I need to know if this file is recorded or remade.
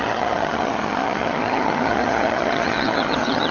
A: remade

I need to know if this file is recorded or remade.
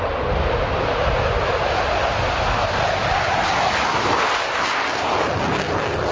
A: recorded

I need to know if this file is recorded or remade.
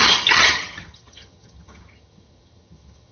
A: remade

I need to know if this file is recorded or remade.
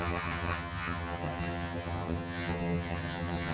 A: remade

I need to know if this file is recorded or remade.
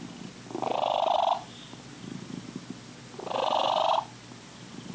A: recorded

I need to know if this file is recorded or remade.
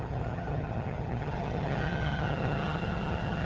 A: remade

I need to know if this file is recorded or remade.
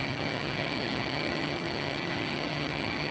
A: remade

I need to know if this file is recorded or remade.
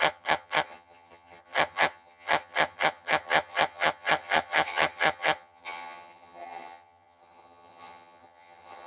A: remade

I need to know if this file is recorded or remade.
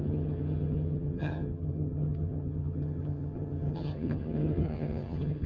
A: remade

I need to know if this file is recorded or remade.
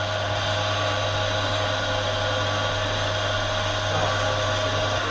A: recorded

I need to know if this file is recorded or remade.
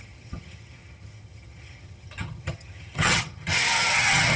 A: remade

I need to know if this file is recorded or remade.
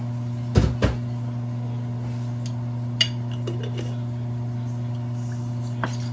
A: recorded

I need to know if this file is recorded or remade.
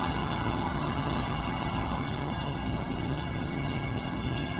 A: remade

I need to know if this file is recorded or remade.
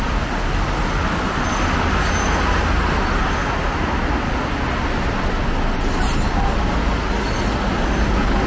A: recorded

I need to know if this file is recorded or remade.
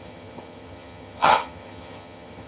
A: remade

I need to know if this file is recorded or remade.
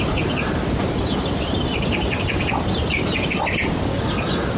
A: recorded